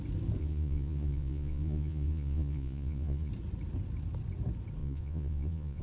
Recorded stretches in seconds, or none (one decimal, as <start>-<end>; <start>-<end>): 0.0-0.4; 3.3-4.8